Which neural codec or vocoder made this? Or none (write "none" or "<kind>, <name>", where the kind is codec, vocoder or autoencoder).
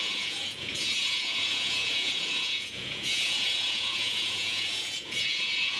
vocoder, Vocos